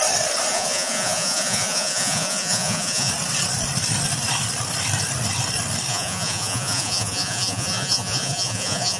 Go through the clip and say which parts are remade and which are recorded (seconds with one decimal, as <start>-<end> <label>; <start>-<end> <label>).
0.0-0.5 recorded; 0.5-3.1 remade; 3.1-5.9 recorded; 5.9-9.0 remade